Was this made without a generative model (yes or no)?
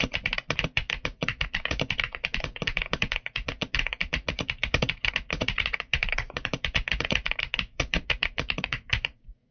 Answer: no